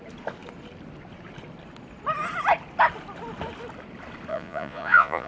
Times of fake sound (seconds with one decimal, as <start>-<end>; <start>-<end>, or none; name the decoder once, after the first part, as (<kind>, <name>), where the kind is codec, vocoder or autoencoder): 4.3-5.3 (vocoder, Vocos)